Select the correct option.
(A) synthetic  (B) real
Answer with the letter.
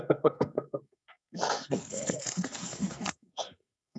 A